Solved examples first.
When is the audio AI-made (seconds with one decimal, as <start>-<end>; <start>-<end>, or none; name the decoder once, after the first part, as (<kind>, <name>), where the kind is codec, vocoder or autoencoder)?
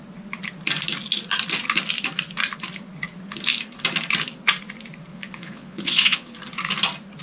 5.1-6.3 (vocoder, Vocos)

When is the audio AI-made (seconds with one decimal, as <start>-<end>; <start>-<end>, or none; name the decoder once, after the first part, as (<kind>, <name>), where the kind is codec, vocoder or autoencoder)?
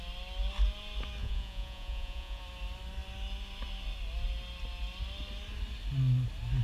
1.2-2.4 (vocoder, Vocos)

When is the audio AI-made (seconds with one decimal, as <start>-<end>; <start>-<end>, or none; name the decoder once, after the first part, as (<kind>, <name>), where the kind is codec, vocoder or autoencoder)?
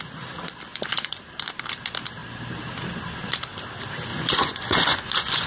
0.7-1.2 (vocoder, Vocos); 4.1-5.5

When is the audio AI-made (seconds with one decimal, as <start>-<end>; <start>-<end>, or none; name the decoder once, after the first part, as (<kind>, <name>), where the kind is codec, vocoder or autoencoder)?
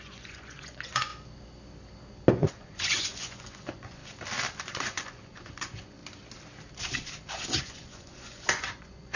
0.0-1.1 (vocoder, Vocos); 2.3-4.0; 4.6-6.0; 7.6-9.2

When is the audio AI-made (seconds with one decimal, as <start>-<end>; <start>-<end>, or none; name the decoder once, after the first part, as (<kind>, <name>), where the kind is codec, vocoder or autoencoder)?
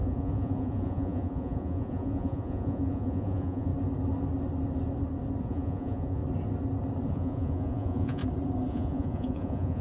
0.0-3.7 (vocoder, Vocos); 5.4-6.2; 7.1-8.2; 8.7-9.8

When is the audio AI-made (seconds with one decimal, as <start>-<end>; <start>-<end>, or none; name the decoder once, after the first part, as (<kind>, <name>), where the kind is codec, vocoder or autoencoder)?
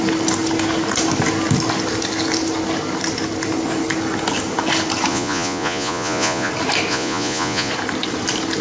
5.1-6.5 (vocoder, Vocos); 6.9-7.7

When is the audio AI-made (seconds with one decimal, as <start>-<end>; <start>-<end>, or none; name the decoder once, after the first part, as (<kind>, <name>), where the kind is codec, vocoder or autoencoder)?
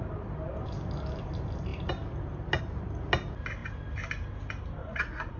4.8-5.4 (vocoder, Vocos)